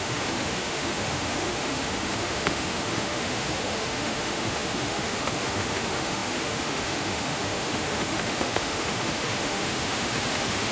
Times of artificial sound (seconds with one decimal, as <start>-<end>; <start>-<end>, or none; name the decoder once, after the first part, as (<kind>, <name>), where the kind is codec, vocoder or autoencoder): 0.0-10.7 (autoencoder, DAC-VAE)